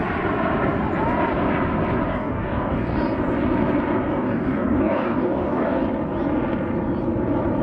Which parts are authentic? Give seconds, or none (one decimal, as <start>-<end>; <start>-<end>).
0.0-2.1; 3.0-4.1; 5.8-7.6